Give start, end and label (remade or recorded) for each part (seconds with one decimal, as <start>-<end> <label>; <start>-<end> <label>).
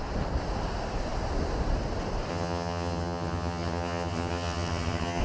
0.0-2.3 recorded; 2.3-5.2 remade